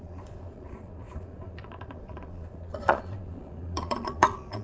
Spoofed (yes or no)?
yes